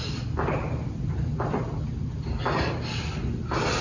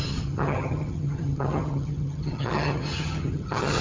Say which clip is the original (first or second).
first